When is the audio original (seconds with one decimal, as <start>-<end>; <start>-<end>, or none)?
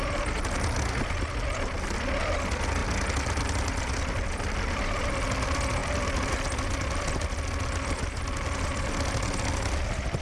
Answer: 0.0-10.2